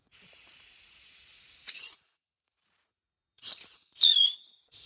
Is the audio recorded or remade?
remade